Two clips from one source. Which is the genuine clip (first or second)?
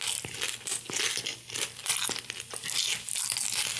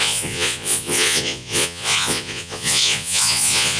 first